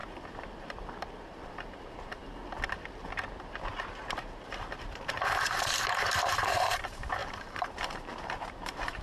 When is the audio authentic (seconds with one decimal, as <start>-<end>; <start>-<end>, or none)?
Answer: 0.0-0.6; 2.2-4.0